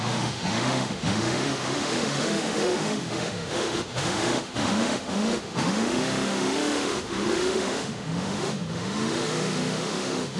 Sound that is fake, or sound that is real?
fake